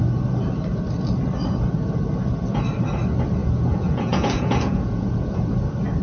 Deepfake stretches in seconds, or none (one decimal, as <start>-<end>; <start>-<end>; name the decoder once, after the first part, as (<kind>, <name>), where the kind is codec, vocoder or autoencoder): 3.4-5.5 (vocoder, Vocos)

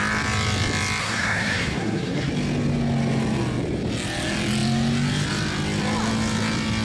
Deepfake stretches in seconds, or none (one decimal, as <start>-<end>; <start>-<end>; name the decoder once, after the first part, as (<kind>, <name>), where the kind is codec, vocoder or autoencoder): 1.0-2.3 (codec, SNAC)

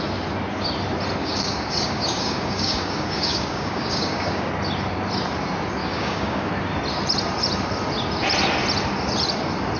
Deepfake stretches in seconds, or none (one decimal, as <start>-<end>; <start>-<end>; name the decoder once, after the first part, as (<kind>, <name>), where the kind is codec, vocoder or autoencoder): 1.2-4.5 (codec, DAC); 5.8-6.5